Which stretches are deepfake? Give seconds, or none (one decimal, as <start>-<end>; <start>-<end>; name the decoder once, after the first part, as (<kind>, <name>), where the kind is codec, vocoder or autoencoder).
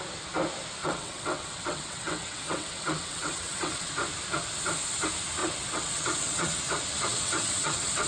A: 0.8-3.9 (vocoder, WaveNeXt); 5.4-6.6; 7.1-8.1